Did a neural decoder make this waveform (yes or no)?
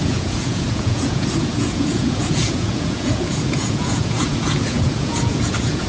yes